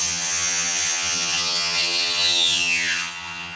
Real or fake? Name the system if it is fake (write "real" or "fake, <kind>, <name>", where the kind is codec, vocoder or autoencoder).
fake, vocoder, HiFi-GAN